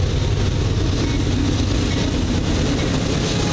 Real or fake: real